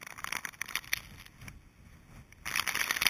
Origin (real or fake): real